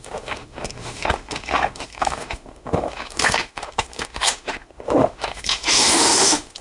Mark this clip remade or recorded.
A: remade